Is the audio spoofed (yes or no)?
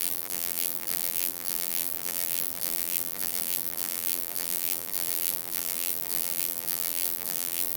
yes